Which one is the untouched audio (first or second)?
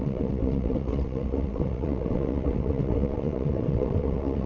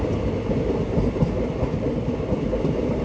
second